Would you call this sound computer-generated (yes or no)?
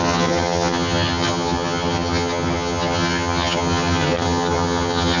yes